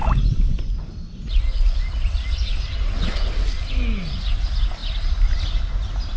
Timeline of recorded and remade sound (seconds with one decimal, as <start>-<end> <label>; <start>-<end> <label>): 0.0-3.7 remade; 3.7-6.2 recorded